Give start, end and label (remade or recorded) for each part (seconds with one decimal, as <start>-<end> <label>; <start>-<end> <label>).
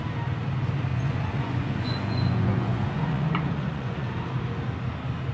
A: 0.0-0.9 recorded; 0.9-4.1 remade; 4.1-5.3 recorded